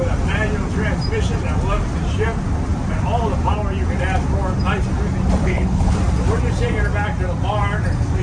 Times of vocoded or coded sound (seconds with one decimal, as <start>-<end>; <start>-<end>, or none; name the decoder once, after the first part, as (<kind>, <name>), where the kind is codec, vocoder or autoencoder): 5.4-5.9 (codec, HILCodec)